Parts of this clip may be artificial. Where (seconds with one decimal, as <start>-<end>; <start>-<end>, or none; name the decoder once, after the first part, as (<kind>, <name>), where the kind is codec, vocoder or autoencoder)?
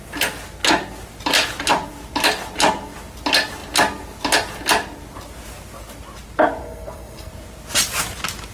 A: 6.6-7.3 (codec, SNAC)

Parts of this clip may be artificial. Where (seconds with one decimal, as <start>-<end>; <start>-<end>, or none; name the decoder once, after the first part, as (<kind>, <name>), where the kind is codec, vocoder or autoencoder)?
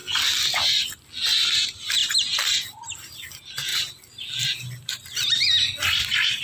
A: 1.5-2.0 (vocoder, BigVGAN v2); 2.8-3.7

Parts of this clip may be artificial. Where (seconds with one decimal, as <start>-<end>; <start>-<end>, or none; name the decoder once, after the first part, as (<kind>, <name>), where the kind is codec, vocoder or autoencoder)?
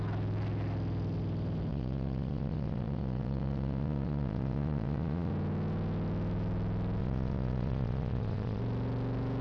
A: 1.7-5.3 (vocoder, Vocos); 7.0-8.6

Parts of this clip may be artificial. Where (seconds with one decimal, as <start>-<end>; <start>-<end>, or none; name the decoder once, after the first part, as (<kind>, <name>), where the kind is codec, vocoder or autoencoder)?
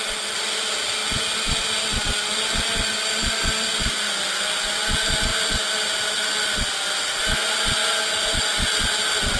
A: none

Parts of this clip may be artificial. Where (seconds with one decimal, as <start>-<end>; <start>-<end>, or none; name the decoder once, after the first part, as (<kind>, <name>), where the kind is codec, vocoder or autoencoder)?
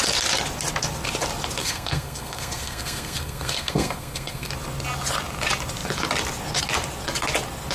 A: 1.6-4.5 (codec, SNAC)